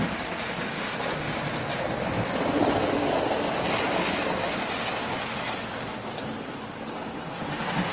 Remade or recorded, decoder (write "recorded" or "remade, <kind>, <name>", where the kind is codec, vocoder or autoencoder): recorded